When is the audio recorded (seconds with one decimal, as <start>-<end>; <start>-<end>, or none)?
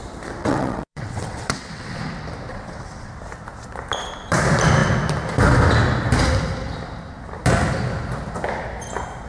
0.0-0.4; 2.0-2.5; 3.1-9.3